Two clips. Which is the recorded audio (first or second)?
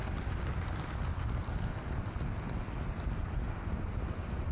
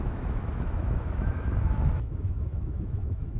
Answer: first